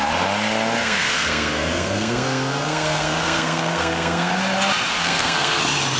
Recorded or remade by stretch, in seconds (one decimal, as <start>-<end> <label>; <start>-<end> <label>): 0.0-0.8 recorded; 0.8-4.4 remade; 4.4-4.9 recorded; 4.9-5.6 remade; 5.6-6.0 recorded